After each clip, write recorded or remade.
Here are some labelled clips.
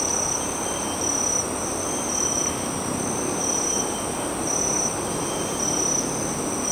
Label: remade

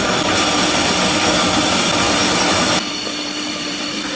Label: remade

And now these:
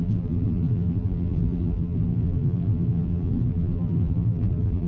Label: remade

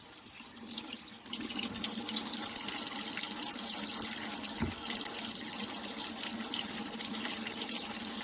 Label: remade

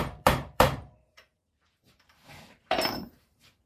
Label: remade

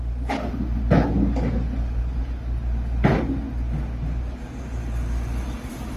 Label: recorded